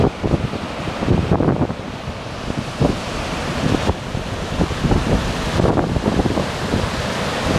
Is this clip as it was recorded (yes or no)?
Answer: yes